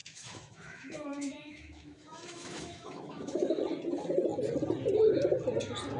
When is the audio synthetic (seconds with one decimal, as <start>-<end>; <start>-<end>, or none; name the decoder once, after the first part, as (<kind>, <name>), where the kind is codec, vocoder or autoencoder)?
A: 0.0-3.6 (autoencoder, DAC-VAE)